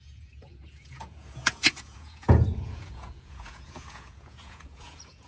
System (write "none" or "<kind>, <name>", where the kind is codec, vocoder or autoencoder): vocoder, Vocos